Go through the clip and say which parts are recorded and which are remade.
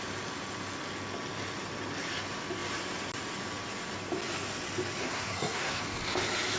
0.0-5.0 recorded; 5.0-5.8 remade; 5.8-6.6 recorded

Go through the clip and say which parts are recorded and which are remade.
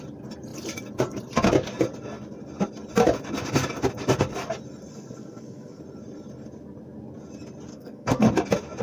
0.0-4.9 recorded; 4.9-5.8 remade; 5.8-7.7 recorded; 7.7-8.3 remade; 8.3-8.8 recorded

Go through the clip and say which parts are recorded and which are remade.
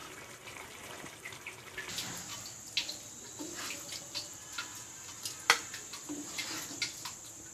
0.0-1.7 remade; 1.7-7.5 recorded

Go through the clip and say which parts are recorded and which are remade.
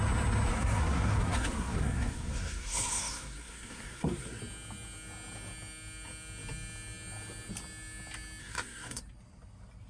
0.0-0.5 recorded; 0.5-4.4 remade; 4.4-8.4 recorded; 8.4-9.0 remade; 9.0-9.9 recorded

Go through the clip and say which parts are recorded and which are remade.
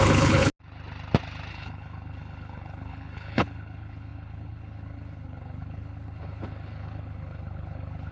0.0-0.5 remade; 0.5-1.5 recorded; 1.5-8.1 remade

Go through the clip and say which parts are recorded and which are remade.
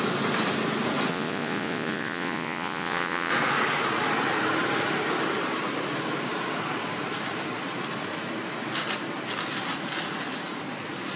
0.0-1.1 recorded; 1.1-3.3 remade; 3.3-11.2 recorded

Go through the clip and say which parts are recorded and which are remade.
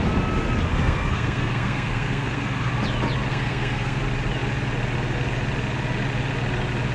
0.0-0.7 recorded; 0.7-2.7 remade; 2.7-3.3 recorded; 3.3-4.0 remade; 4.0-6.9 recorded